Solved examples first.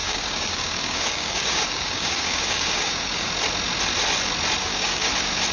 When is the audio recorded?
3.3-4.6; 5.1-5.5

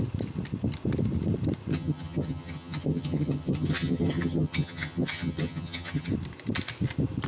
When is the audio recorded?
0.0-1.7; 6.1-7.3